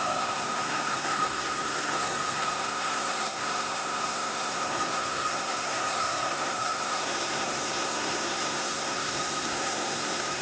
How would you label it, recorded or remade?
remade